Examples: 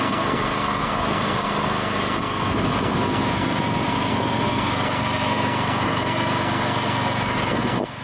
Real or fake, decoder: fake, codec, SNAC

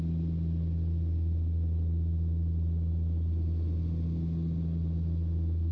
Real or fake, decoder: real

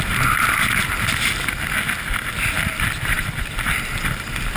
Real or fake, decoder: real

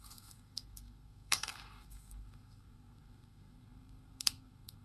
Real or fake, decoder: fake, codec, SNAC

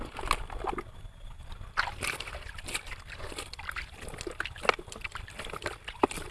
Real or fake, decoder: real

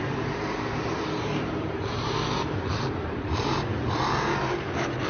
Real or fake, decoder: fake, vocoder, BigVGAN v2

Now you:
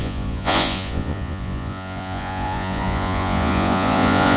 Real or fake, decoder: fake, vocoder, Vocos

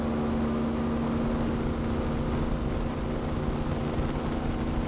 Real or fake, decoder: real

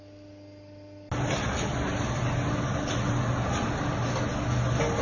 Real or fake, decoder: real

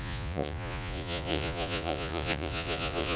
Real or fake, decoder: fake, vocoder, Vocos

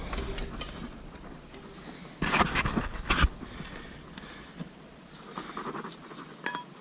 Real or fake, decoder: real